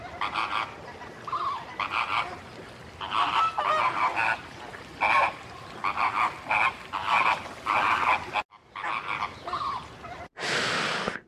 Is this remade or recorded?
recorded